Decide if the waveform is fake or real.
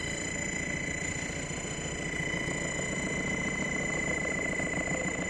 fake